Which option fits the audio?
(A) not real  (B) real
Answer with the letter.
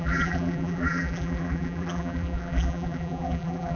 A